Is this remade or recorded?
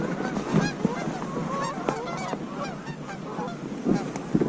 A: recorded